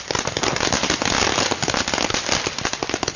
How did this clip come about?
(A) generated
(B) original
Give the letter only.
B